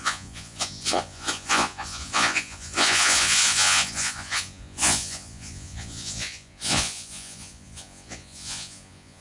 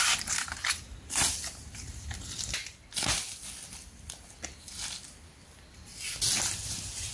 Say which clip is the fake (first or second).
first